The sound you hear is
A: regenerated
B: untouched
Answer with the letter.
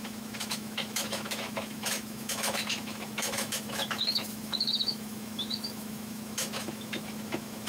A